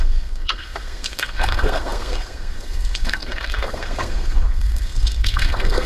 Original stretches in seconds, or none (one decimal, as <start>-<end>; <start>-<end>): none